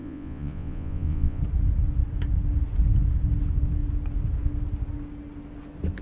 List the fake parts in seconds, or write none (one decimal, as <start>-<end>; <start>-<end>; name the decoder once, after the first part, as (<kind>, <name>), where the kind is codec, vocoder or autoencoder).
0.0-1.4 (vocoder, Vocos)